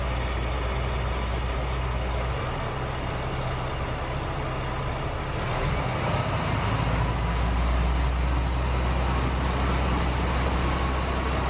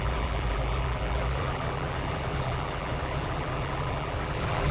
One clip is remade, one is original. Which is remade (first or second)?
second